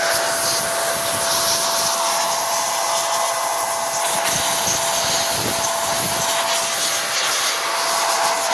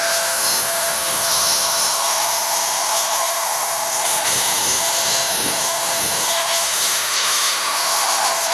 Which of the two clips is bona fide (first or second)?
first